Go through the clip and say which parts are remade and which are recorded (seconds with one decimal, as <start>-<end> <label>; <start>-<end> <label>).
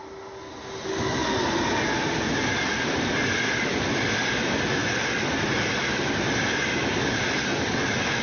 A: 0.0-4.8 recorded; 4.8-5.6 remade; 5.6-8.2 recorded